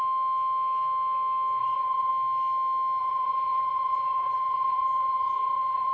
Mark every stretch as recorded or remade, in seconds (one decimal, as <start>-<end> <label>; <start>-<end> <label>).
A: 0.0-1.6 recorded; 1.6-2.1 remade; 2.1-3.0 recorded; 3.0-5.9 remade